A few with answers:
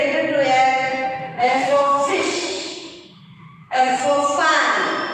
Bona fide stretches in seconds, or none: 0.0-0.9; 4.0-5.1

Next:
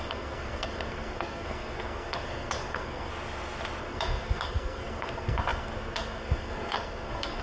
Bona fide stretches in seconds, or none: 3.1-3.8

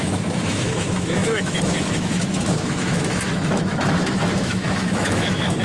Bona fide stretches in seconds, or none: none

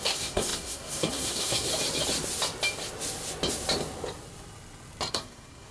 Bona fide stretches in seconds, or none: 1.7-5.1